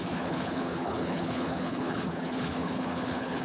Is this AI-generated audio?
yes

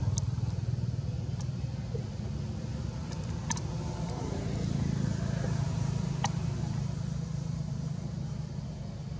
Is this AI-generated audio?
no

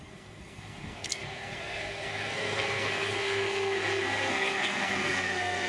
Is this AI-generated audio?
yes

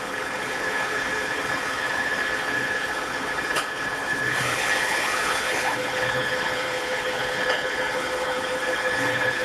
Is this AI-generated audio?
yes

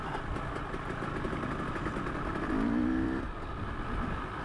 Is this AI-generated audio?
yes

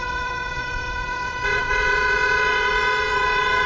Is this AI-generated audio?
yes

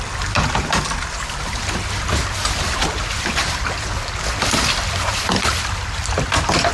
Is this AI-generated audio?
no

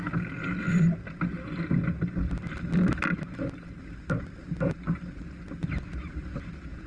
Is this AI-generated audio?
no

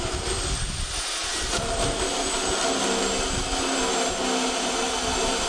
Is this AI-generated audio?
no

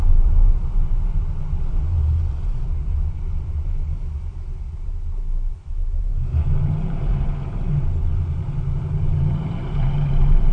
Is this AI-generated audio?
yes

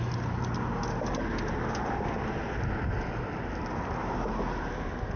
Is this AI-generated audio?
no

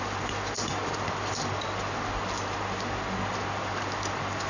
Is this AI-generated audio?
no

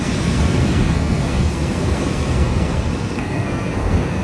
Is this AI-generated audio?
yes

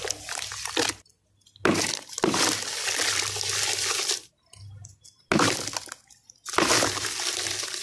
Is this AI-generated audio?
no